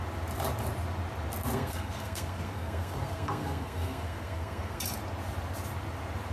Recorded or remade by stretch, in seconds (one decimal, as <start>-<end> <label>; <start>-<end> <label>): 0.0-1.5 recorded; 1.5-4.8 remade; 4.8-6.3 recorded